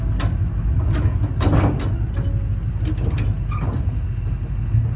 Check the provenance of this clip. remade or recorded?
recorded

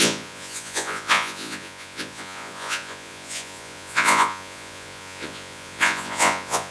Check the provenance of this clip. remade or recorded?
remade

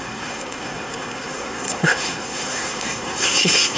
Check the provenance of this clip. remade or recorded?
remade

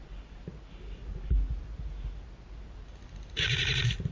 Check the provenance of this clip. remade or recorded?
recorded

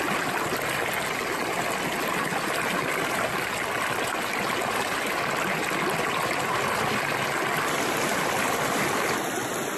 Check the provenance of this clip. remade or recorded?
recorded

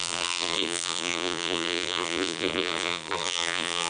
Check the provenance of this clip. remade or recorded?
remade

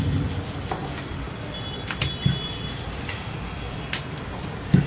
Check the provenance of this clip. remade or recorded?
recorded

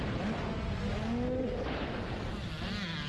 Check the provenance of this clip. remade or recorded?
recorded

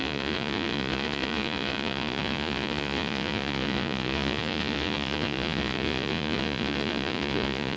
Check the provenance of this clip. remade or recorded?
remade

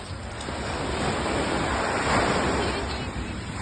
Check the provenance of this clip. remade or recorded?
recorded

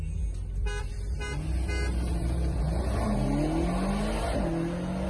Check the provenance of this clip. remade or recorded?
recorded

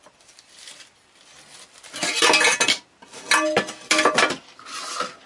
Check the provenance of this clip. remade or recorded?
recorded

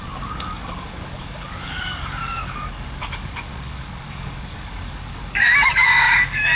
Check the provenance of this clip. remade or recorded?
remade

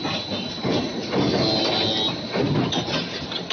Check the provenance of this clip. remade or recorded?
recorded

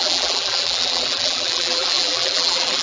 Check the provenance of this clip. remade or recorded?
remade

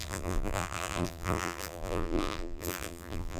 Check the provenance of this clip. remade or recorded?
remade